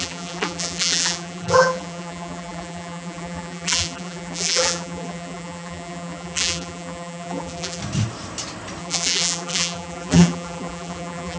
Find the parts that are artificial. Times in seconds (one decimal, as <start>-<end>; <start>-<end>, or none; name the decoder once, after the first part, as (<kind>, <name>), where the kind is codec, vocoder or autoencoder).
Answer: 0.0-7.8 (vocoder, BigVGAN v2); 8.8-11.4